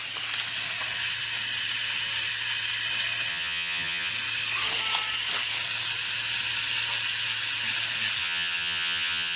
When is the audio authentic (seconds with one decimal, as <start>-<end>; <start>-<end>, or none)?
0.0-3.3; 4.1-8.2